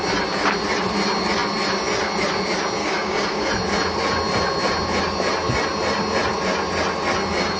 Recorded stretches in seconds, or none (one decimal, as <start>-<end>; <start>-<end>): 0.0-2.8; 3.5-7.6